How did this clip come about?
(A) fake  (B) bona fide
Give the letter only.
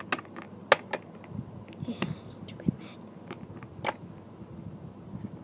B